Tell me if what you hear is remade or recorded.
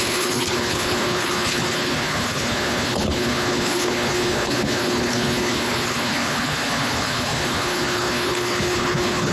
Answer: remade